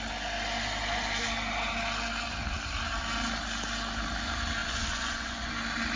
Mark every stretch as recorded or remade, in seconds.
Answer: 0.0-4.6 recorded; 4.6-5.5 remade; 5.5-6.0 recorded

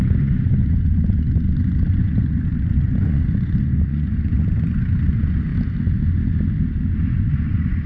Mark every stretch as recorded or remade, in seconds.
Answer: 0.0-5.5 remade; 5.5-6.9 recorded; 6.9-7.9 remade